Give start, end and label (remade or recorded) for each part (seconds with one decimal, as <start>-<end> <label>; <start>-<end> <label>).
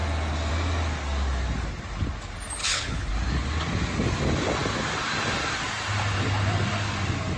0.0-2.6 recorded; 2.6-3.1 remade; 3.1-7.4 recorded